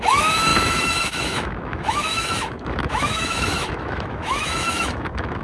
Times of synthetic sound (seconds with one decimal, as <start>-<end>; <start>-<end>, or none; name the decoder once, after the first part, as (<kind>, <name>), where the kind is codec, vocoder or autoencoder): 0.0-5.4 (autoencoder, DAC-VAE)